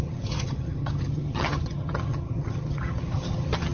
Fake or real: fake